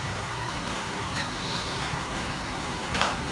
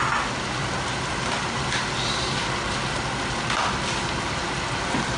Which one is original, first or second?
second